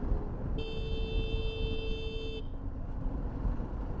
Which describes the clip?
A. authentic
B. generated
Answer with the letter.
A